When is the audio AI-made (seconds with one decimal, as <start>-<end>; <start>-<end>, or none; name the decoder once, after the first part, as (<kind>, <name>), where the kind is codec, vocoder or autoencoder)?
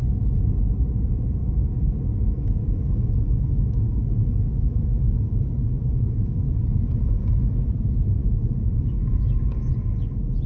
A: 1.4-5.0 (autoencoder, DAC-VAE); 5.6-6.6; 8.2-9.7